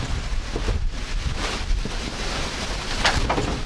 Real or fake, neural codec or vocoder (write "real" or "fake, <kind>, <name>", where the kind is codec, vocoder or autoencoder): real